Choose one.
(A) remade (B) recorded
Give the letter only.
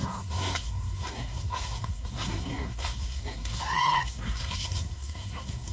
A